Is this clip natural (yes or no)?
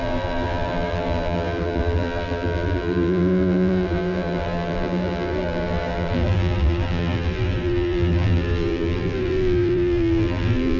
no